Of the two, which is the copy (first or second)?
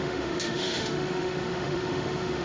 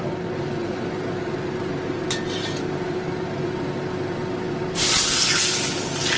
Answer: first